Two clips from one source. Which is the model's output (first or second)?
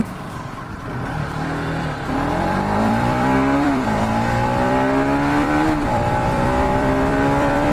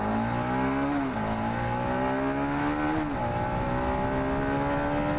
first